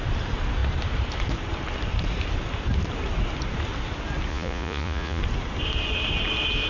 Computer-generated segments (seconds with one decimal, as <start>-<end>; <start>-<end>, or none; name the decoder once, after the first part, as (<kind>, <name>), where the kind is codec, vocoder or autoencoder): 4.3-5.2 (vocoder, Vocos)